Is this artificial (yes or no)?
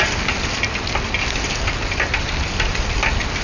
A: no